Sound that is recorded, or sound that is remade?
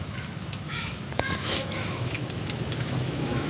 remade